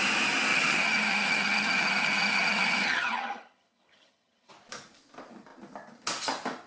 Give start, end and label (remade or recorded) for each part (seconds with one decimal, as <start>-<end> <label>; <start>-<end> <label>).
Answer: 0.0-0.5 recorded; 0.5-4.5 remade; 4.5-6.7 recorded